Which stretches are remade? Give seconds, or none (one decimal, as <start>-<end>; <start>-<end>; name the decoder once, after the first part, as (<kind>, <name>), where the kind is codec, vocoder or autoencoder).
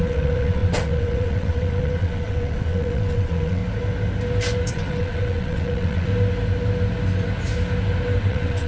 0.0-3.6 (vocoder, WaveNeXt); 4.7-6.1; 8.2-8.7